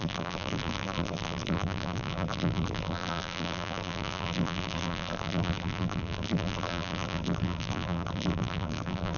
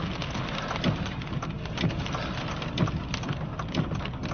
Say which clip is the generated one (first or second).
first